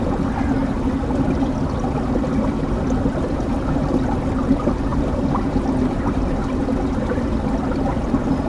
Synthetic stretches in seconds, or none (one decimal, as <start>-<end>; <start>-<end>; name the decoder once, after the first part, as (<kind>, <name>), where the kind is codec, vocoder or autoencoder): none